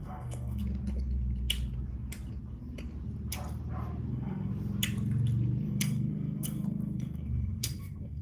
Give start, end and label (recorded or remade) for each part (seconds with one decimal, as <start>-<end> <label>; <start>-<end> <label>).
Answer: 0.0-0.6 remade; 0.6-4.1 recorded; 4.1-4.5 remade; 4.5-5.7 recorded; 5.7-8.2 remade